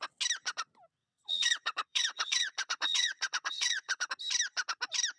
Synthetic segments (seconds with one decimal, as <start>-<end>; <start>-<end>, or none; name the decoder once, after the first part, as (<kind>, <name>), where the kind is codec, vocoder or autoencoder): 1.0-4.1 (vocoder, WaveNeXt)